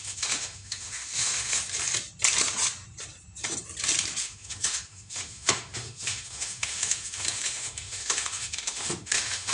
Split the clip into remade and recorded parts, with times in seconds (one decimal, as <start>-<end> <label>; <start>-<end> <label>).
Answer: 0.0-1.6 remade; 1.6-4.2 recorded; 4.2-9.5 remade